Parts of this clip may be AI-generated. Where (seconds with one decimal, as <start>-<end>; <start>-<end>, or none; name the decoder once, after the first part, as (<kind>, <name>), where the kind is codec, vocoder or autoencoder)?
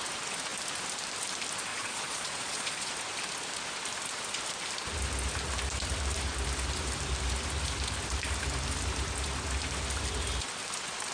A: 1.7-2.9 (vocoder, Vocos)